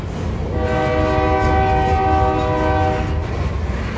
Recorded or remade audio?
recorded